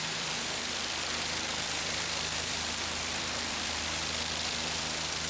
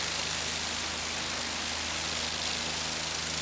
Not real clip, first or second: first